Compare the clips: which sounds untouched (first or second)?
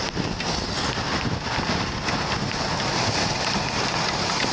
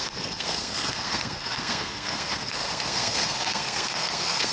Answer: first